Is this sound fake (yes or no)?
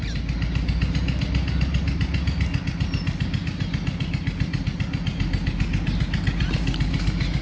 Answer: no